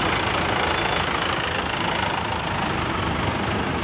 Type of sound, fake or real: real